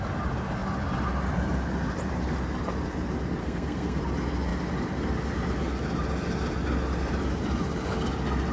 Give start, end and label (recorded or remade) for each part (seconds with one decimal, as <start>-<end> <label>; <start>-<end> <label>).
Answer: 0.0-3.4 recorded; 3.4-4.0 remade; 4.0-8.5 recorded